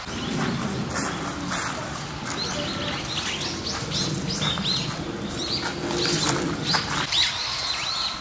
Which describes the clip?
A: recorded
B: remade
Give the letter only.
A